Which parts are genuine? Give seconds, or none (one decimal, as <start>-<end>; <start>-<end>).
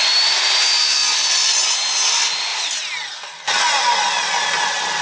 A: 0.0-5.0